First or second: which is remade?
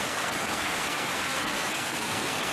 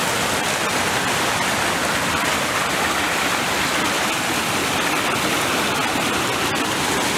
first